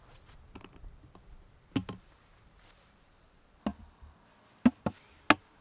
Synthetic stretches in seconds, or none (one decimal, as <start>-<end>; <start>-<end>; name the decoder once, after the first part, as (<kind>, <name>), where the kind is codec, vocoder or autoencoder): none